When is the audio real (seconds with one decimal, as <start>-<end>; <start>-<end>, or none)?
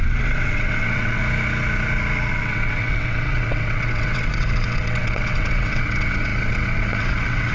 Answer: 1.2-2.3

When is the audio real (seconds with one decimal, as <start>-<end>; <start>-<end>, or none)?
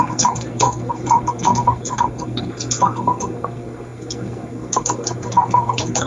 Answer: none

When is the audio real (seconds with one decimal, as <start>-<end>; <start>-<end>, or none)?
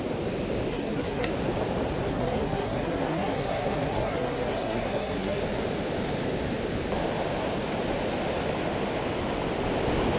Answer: 0.0-0.7; 1.3-2.1; 5.4-10.2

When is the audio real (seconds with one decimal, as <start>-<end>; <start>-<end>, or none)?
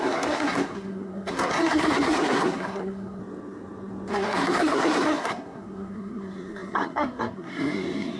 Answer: 3.2-4.1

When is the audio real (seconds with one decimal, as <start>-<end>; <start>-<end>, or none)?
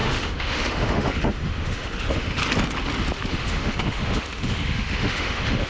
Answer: 2.4-3.3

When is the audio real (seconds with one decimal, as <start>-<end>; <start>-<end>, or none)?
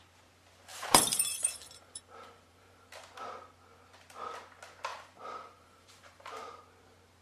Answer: 0.0-0.7; 2.9-4.9; 6.4-7.2